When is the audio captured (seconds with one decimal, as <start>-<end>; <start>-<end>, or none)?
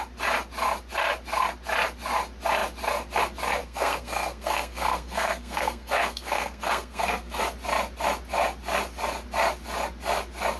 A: 0.0-3.6; 7.4-10.6